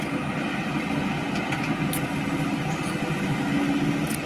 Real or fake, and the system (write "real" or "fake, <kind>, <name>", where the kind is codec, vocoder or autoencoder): real